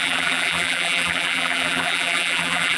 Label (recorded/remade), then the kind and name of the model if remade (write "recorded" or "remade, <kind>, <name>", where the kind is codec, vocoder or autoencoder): remade, vocoder, BigVGAN v2